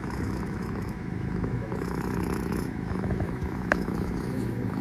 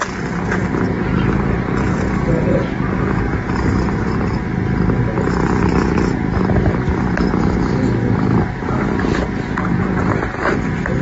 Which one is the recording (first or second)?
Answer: second